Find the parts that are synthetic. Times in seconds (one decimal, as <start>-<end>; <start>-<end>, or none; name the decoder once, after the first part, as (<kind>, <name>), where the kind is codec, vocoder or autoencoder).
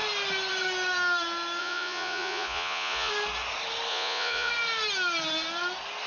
1.6-3.1 (vocoder, Vocos); 3.9-4.5